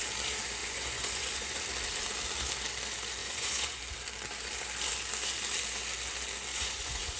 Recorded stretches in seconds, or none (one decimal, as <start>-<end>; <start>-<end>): 0.0-0.6; 1.6-3.2; 3.8-6.5